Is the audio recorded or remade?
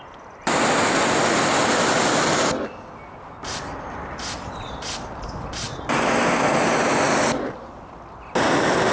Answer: recorded